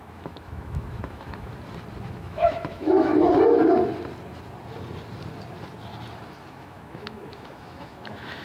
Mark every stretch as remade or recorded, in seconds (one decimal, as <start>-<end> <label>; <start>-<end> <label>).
0.0-1.5 remade; 1.5-2.1 recorded; 2.1-3.1 remade; 3.1-6.5 recorded; 6.5-8.4 remade